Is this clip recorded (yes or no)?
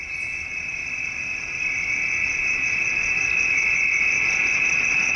yes